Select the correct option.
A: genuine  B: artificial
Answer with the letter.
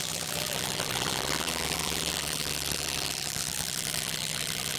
B